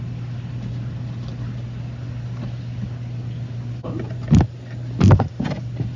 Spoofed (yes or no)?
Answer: no